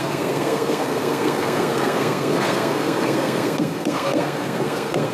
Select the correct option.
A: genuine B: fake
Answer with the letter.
B